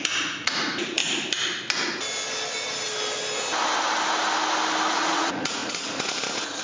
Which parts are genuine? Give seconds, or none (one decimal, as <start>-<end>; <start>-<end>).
1.0-4.9